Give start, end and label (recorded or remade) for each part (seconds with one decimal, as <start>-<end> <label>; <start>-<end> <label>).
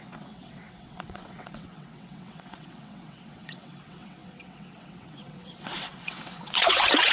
0.0-7.1 remade